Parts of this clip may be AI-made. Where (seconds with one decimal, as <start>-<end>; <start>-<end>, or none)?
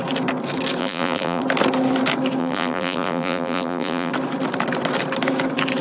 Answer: 0.8-1.4; 2.4-4.1